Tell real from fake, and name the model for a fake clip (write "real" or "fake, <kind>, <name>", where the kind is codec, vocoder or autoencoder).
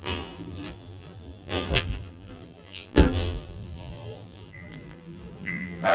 fake, vocoder, BigVGAN v2